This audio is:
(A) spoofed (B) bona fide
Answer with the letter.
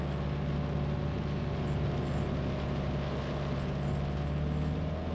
B